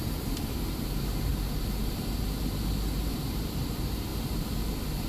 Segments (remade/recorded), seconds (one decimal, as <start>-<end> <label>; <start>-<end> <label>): 0.0-1.3 remade; 1.3-2.2 recorded; 2.2-4.1 remade; 4.1-5.1 recorded